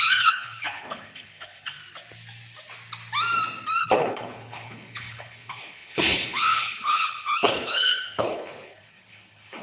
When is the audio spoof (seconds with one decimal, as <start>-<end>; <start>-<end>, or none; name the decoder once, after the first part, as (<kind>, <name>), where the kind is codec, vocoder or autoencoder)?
0.0-1.8 (codec, HILCodec); 3.8-9.6